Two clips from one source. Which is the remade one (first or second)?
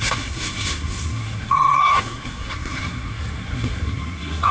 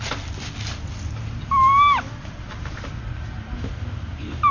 first